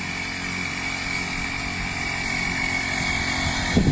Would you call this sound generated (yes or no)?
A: no